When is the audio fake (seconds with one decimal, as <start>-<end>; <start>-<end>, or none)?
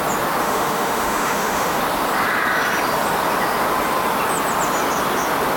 0.4-1.8